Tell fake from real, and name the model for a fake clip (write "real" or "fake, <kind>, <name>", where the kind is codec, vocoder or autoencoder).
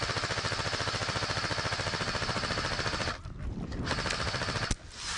real